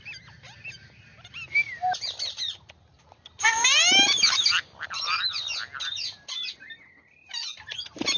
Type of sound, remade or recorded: recorded